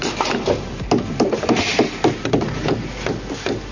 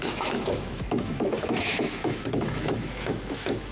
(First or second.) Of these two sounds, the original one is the first